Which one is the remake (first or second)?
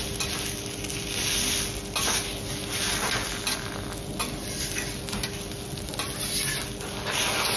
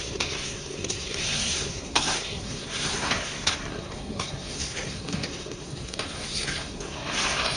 second